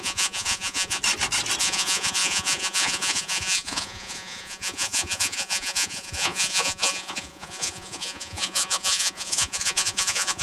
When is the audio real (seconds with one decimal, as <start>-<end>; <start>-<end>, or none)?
1.0-1.6